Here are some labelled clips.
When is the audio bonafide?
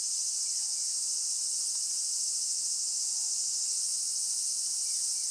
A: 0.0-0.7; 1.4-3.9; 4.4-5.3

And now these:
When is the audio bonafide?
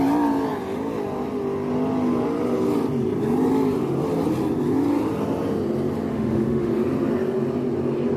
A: 0.0-6.1; 6.7-8.2